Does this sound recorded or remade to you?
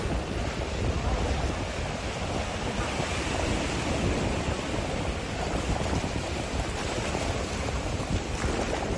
remade